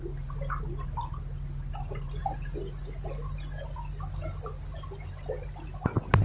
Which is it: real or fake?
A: real